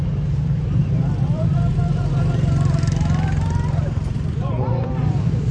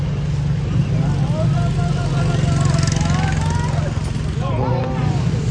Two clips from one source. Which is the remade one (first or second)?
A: first